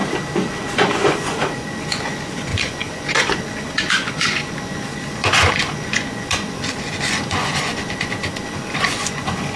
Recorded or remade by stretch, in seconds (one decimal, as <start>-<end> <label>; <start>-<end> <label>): 0.0-0.5 recorded; 0.5-9.6 remade